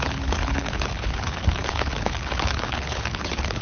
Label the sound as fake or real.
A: fake